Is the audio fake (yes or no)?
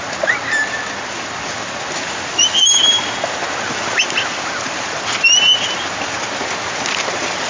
no